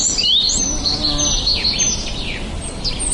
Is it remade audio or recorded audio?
remade